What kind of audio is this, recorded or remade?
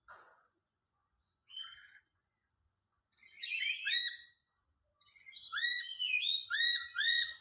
remade